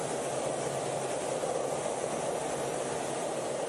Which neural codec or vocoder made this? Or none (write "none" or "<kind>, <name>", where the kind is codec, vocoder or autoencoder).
none